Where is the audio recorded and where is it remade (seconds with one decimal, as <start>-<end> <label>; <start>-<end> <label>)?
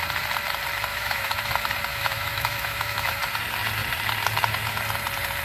0.0-0.9 recorded; 0.9-1.5 remade; 1.5-1.9 recorded; 1.9-3.2 remade; 3.2-5.4 recorded